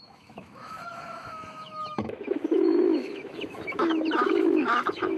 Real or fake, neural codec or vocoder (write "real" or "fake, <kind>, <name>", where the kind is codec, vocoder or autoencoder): fake, autoencoder, DAC-VAE